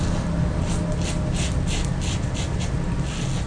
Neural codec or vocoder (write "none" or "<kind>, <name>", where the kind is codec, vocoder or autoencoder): none